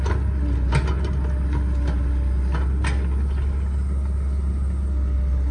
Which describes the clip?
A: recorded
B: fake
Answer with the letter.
A